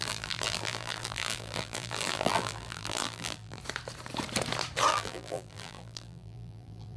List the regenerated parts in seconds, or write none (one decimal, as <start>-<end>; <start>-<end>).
0.0-3.6; 4.9-7.0